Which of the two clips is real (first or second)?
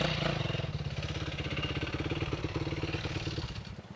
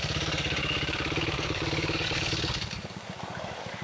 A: first